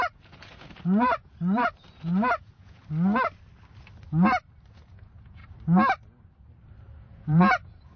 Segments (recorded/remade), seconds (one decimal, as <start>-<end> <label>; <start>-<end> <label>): 0.0-2.8 remade; 2.8-4.7 recorded; 4.7-5.4 remade; 5.4-7.0 recorded; 7.0-8.0 remade